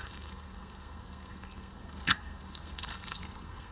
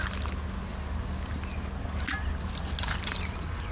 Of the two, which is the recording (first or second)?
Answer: second